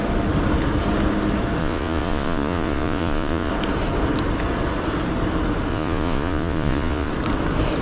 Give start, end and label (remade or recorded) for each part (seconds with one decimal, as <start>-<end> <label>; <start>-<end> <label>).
0.0-1.6 recorded; 1.6-3.5 remade; 3.5-5.7 recorded; 5.7-7.1 remade; 7.1-7.8 recorded